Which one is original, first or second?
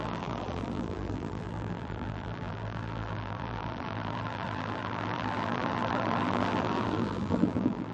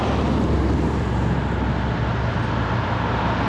second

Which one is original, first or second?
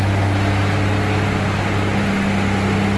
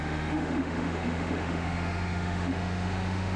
first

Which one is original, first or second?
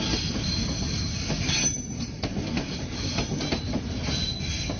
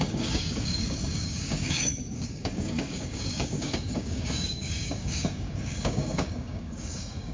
first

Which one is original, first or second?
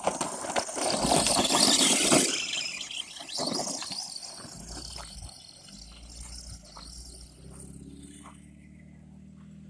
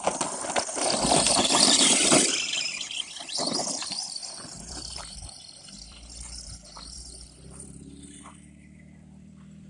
first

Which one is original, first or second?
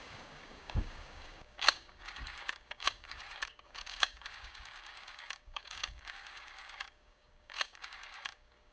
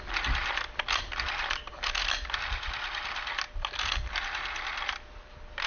second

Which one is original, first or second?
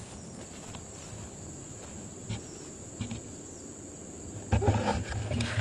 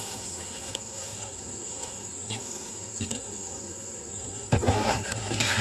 first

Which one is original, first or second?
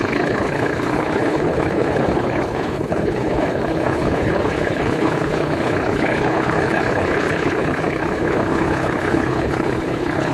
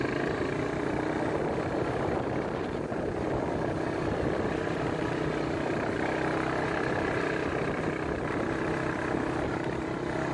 second